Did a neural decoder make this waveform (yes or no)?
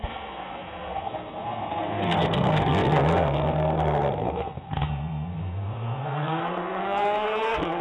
yes